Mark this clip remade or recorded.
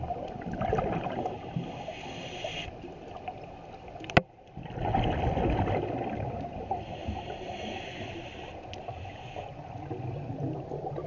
recorded